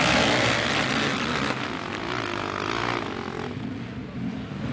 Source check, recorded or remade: recorded